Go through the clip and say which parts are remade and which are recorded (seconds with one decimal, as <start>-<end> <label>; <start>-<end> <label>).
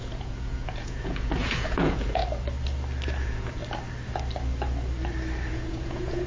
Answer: 0.0-2.2 remade; 2.2-3.2 recorded; 3.2-3.6 remade; 3.6-5.5 recorded; 5.5-6.3 remade